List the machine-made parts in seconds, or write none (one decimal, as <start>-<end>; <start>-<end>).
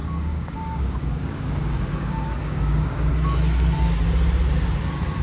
0.0-3.1